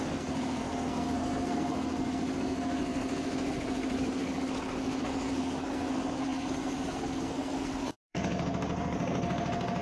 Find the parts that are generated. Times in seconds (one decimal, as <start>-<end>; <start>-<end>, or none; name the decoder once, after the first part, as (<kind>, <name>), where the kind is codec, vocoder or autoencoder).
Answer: 0.0-9.8 (codec, SNAC)